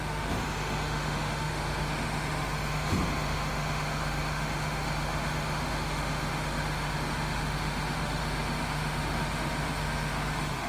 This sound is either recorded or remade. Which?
remade